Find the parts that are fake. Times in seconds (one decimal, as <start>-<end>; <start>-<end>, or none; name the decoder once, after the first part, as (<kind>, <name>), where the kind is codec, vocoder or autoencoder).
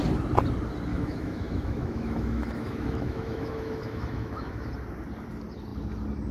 0.9-4.7 (autoencoder, DAC-VAE)